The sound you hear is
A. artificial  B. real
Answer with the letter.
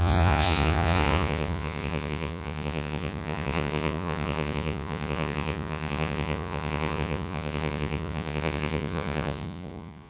A